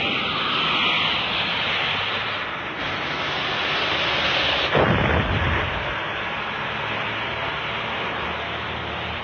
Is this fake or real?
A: real